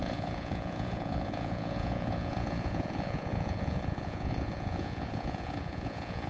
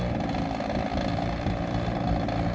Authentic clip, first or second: second